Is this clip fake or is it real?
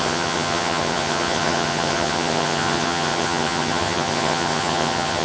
fake